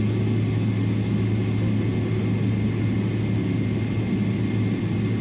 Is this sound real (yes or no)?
yes